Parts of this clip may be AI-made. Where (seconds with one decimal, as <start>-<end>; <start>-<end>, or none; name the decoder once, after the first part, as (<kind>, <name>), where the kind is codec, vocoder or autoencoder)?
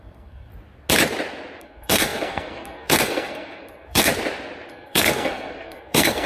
0.0-0.5 (codec, SNAC); 1.6-4.1; 4.7-6.3